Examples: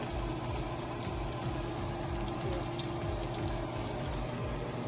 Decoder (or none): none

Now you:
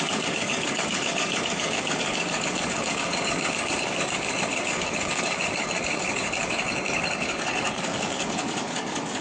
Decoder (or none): codec, DAC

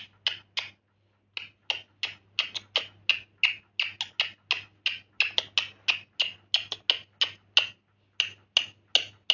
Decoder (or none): none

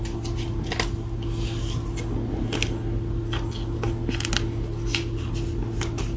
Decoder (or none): none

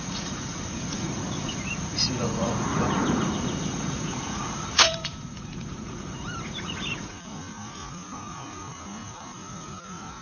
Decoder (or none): vocoder, Vocos